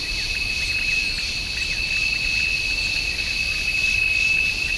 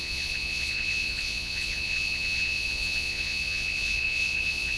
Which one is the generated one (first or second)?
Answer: second